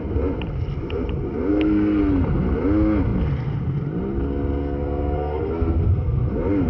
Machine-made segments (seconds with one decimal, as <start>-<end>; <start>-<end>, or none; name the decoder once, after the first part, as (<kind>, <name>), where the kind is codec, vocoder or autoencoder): 1.5-2.0 (codec, SNAC); 4.6-6.3